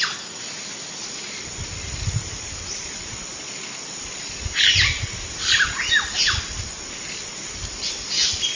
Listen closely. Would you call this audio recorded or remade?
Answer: recorded